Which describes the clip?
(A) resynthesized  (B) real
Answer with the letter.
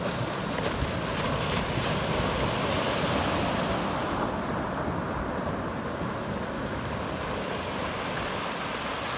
B